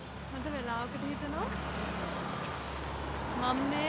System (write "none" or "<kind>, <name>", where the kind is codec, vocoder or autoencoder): none